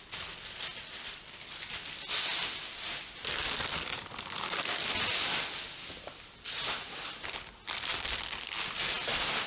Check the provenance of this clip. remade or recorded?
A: recorded